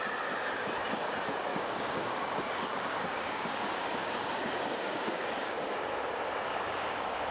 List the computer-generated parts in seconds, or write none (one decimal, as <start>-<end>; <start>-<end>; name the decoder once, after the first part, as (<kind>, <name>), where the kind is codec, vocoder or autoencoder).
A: 1.5-5.8 (codec, DAC); 6.5-7.3